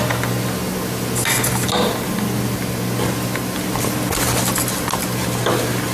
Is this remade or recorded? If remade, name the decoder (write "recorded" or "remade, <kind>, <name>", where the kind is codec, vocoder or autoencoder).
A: recorded